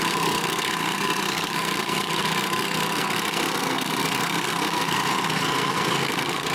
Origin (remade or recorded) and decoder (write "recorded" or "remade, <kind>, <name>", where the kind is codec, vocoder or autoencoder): remade, codec, SNAC